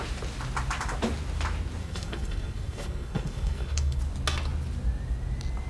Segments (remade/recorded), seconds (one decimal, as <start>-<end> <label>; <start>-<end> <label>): 0.0-1.8 recorded; 1.8-4.0 remade; 4.0-5.7 recorded